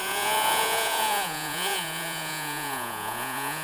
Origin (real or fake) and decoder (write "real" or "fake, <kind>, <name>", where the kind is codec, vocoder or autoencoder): fake, vocoder, Vocos